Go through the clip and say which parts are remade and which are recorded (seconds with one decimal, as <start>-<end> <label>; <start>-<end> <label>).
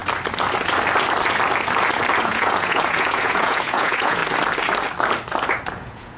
0.0-2.2 recorded; 2.2-4.2 remade; 4.2-5.7 recorded; 5.7-6.2 remade